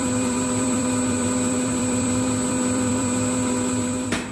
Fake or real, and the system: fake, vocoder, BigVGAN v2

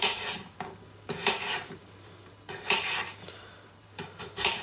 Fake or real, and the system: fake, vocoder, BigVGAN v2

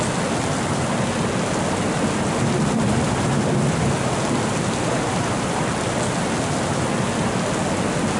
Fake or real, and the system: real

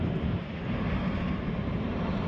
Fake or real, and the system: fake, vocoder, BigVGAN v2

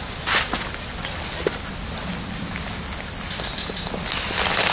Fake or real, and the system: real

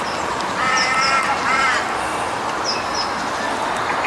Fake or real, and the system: real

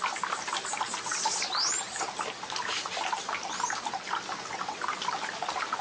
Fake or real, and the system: real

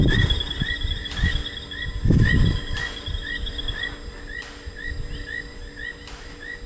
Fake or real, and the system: real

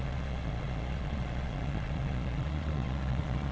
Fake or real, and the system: fake, vocoder, Vocos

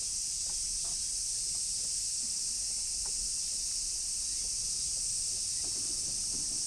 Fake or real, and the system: real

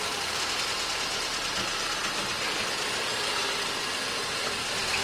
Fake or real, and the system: real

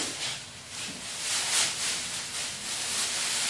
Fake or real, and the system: real